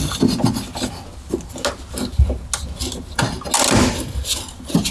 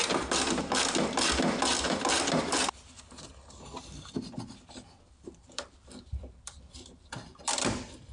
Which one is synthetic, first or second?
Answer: second